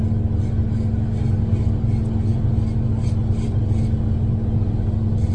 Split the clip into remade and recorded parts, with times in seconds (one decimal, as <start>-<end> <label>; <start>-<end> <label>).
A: 0.0-5.3 recorded